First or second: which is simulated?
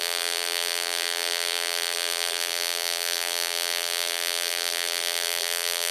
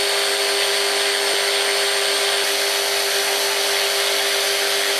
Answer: first